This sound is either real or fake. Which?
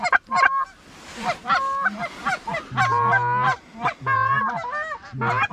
real